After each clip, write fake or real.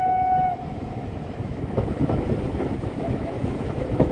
fake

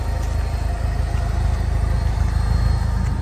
real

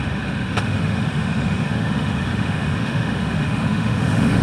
fake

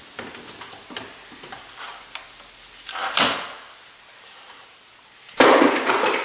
real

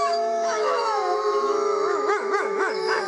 fake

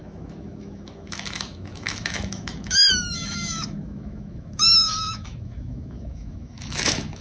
fake